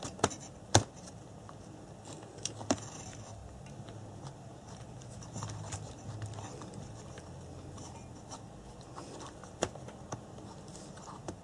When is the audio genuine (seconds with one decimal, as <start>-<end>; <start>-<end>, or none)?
0.0-11.4